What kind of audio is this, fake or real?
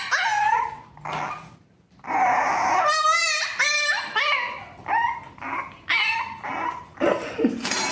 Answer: real